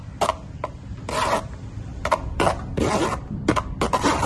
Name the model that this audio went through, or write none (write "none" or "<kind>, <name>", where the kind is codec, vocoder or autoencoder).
vocoder, BigVGAN v2